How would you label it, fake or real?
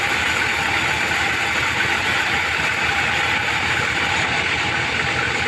real